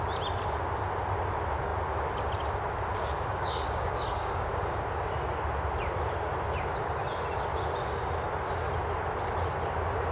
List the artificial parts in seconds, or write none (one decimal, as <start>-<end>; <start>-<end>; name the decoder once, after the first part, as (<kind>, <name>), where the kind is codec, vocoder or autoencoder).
2.9-4.6 (codec, DAC)